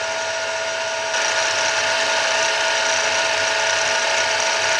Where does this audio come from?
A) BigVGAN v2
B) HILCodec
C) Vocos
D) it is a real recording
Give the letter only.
D